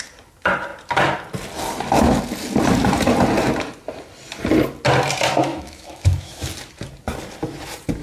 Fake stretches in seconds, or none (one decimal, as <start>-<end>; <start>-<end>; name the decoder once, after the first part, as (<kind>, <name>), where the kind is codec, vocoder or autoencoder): 5.5-6.5 (autoencoder, DAC-VAE)